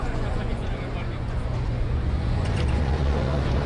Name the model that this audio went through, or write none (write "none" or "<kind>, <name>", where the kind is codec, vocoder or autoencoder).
vocoder, Vocos